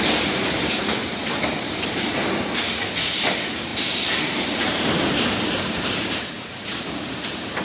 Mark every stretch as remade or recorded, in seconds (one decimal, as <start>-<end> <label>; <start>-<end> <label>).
0.0-1.2 recorded; 1.2-2.3 remade; 2.3-3.7 recorded; 3.7-7.6 remade